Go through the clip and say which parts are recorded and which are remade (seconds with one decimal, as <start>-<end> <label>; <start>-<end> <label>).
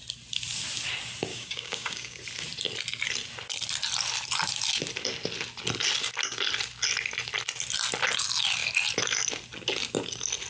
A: 0.0-1.3 recorded; 1.3-2.2 remade; 2.2-10.5 recorded